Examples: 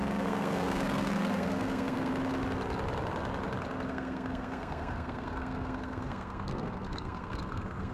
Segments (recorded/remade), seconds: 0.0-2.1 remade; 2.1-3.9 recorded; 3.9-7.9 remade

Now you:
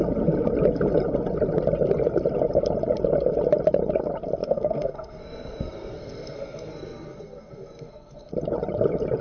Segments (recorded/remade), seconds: 0.0-4.4 recorded; 4.4-8.3 remade; 8.3-9.2 recorded

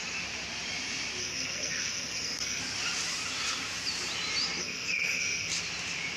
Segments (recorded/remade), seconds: 0.0-1.2 recorded; 1.2-2.6 remade; 2.6-4.6 recorded; 4.6-5.5 remade; 5.5-6.2 recorded

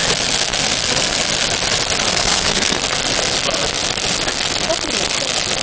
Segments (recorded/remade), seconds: 0.0-2.1 recorded; 2.1-2.8 remade; 2.8-5.6 recorded

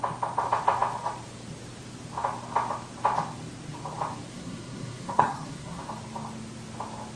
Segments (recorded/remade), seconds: 0.0-4.3 recorded; 4.3-5.8 remade; 5.8-7.2 recorded

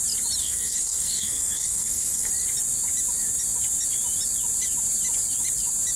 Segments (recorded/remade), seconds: 0.0-0.4 recorded; 0.4-2.3 remade; 2.3-6.0 recorded

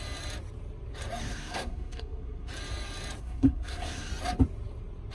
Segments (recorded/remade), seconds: 0.0-1.2 recorded; 1.2-2.5 remade; 2.5-3.2 recorded; 3.2-4.1 remade; 4.1-5.1 recorded

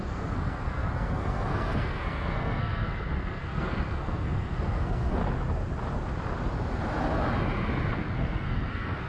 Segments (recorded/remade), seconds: 0.0-5.2 remade; 5.2-7.9 recorded; 7.9-9.1 remade